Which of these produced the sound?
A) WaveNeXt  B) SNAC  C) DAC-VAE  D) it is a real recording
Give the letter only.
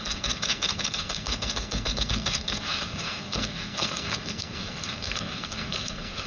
B